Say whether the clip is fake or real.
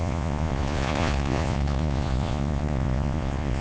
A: fake